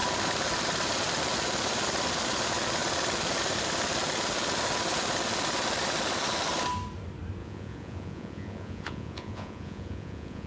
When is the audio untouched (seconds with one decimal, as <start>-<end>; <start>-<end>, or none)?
0.0-7.4